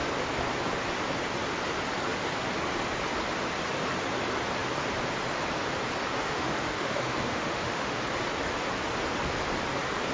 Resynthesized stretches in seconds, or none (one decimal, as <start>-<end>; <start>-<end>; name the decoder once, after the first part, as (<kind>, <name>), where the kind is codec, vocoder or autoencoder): 6.2-8.0 (autoencoder, DAC-VAE)